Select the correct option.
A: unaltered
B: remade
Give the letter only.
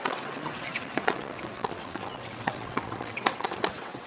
B